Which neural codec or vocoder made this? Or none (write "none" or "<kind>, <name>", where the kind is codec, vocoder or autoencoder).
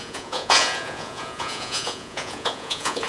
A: vocoder, Vocos